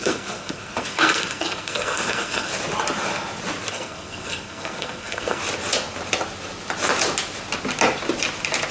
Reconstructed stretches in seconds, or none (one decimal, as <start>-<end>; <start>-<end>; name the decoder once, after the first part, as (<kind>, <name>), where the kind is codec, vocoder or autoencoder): 0.0-2.5 (codec, SNAC); 3.7-5.4